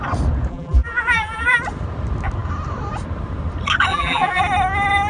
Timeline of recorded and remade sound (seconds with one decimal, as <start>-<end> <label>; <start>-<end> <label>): 0.0-0.5 recorded; 0.5-1.6 remade; 1.6-3.9 recorded; 3.9-4.4 remade; 4.4-5.1 recorded